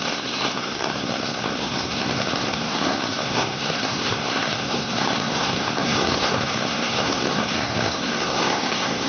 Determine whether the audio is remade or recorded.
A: remade